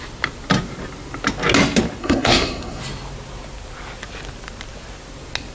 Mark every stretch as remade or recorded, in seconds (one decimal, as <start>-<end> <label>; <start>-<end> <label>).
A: 0.0-2.0 recorded; 2.0-2.8 remade; 2.8-5.5 recorded